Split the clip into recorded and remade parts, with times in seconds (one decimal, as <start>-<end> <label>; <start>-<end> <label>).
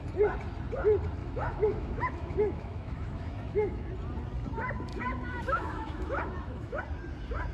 0.0-1.2 recorded; 1.2-3.9 remade; 3.9-4.9 recorded; 4.9-6.8 remade; 6.8-7.5 recorded